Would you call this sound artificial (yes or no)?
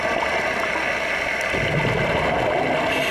no